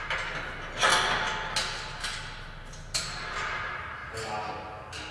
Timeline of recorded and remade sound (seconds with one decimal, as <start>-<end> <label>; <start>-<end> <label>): 0.0-5.1 recorded